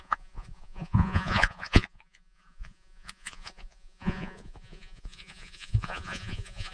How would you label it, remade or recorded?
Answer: remade